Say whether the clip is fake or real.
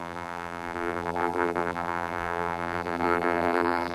fake